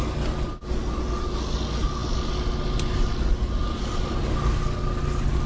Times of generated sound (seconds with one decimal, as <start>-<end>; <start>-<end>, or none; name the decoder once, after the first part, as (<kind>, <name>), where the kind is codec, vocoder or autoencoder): none